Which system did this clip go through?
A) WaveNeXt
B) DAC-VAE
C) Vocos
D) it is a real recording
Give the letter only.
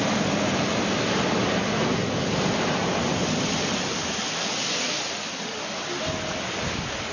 D